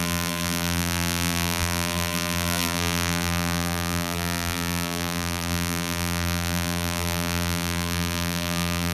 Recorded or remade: remade